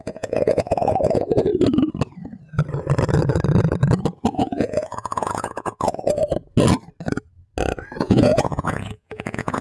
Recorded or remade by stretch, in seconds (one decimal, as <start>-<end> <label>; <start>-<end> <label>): 0.0-1.5 remade; 1.5-4.3 recorded; 4.3-6.2 remade; 6.2-8.0 recorded; 8.0-9.6 remade